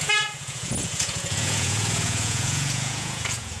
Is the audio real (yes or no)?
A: no